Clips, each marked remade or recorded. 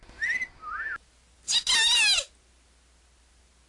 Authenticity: recorded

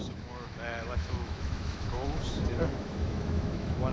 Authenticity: remade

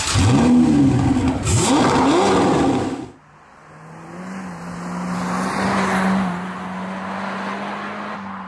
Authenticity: recorded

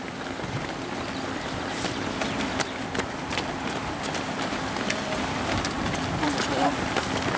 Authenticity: recorded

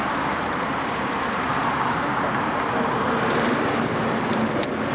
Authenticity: recorded